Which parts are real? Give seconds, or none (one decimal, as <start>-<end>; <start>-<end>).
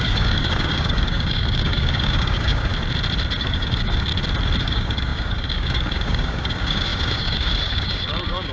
2.7-3.4; 4.1-4.6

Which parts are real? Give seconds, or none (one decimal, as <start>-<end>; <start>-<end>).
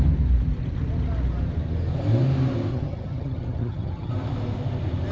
0.0-2.7; 4.1-5.1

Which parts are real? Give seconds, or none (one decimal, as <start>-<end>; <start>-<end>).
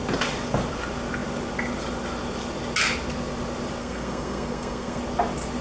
0.0-3.8; 5.0-5.6